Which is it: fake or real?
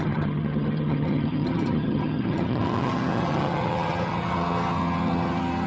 fake